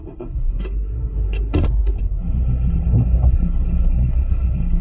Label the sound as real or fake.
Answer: fake